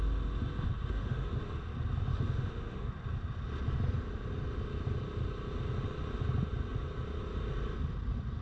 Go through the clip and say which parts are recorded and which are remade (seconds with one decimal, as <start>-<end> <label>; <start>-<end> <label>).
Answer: 0.0-0.7 recorded; 0.7-1.4 remade; 1.4-2.1 recorded; 2.1-2.9 remade; 2.9-8.4 recorded